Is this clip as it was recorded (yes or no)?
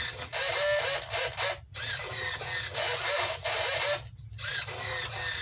yes